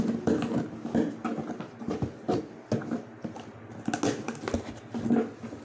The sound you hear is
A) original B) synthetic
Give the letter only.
A